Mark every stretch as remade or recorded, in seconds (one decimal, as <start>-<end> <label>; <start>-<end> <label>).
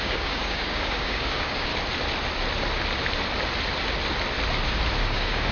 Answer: 0.0-1.7 remade; 1.7-5.0 recorded; 5.0-5.5 remade